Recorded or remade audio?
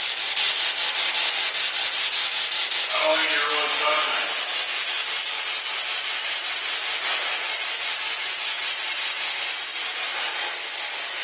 recorded